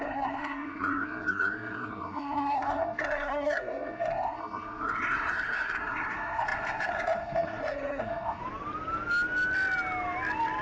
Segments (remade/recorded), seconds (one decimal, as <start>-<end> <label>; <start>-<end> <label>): 0.0-8.4 remade; 8.4-10.6 recorded